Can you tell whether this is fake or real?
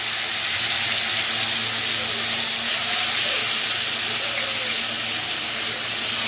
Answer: real